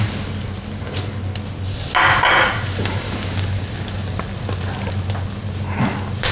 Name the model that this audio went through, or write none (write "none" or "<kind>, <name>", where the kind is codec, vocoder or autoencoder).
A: none